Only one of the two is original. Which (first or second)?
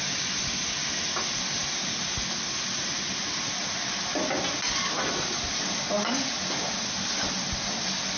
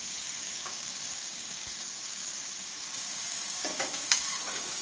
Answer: first